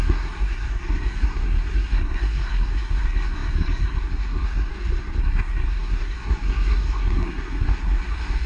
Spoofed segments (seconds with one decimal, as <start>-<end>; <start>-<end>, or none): 0.0-4.7; 5.2-8.5